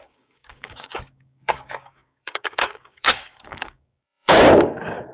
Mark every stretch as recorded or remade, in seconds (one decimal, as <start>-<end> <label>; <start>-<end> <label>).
0.0-5.1 remade